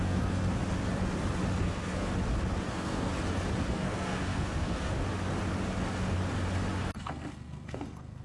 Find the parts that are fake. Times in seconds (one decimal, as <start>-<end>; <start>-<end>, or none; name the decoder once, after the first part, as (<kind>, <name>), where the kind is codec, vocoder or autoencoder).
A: 0.0-0.4 (codec, SNAC); 1.6-2.1; 2.7-3.1; 3.7-4.9; 6.9-8.2

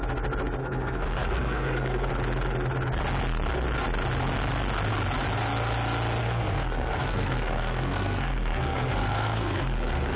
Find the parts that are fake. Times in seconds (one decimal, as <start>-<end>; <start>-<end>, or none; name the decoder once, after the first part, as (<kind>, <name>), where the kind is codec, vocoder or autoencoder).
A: 0.6-2.1 (codec, SNAC); 6.2-10.2